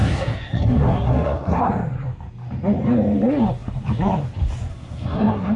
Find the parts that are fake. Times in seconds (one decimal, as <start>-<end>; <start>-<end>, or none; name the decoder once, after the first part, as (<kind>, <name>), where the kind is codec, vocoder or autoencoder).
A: 0.0-1.7 (codec, SNAC); 4.7-5.6